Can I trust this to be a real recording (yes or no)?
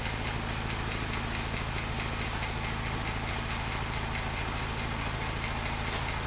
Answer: yes